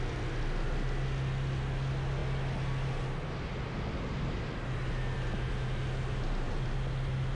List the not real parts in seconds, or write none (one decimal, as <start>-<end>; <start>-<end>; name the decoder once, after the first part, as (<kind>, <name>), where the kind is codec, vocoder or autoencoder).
none